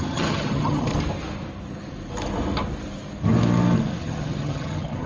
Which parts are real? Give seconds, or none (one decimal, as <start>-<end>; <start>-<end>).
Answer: 0.9-4.0

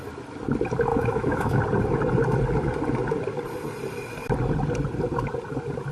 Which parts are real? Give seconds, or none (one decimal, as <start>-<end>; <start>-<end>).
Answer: 0.0-0.9; 1.6-5.9

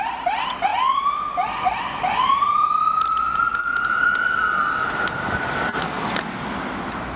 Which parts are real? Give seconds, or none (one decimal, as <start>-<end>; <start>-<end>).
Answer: 0.0-7.2